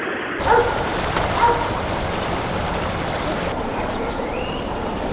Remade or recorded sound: remade